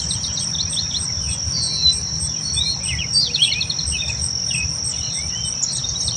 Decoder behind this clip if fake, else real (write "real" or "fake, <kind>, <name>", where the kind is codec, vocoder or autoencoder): real